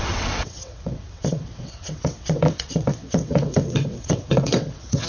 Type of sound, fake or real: fake